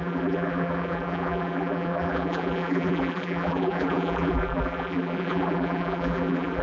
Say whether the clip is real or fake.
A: fake